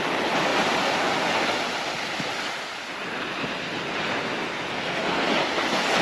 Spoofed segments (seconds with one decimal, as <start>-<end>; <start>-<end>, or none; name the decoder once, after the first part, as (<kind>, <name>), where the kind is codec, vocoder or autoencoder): 4.7-5.3 (codec, SNAC)